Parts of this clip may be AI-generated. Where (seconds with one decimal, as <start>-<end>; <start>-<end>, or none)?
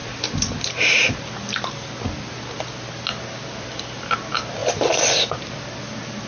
none